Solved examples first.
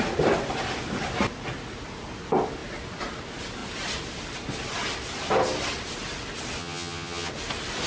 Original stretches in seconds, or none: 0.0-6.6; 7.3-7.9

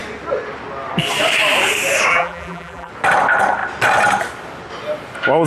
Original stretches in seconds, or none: 0.0-2.1; 2.9-5.5

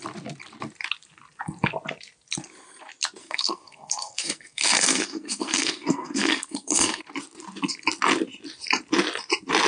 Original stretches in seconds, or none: 0.0-3.2; 7.0-9.7

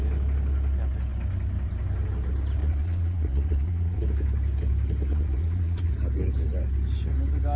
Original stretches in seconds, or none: 0.0-2.6; 4.0-5.1; 5.9-7.6

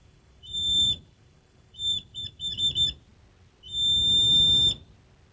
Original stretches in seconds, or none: 2.7-5.3

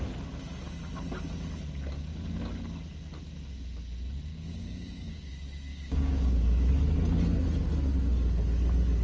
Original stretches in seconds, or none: 0.0-4.3; 5.3-5.7; 6.7-9.0

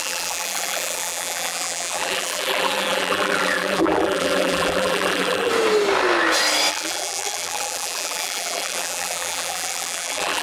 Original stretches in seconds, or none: 5.5-6.7